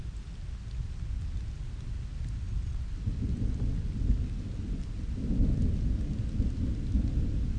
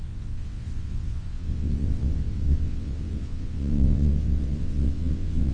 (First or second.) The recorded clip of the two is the first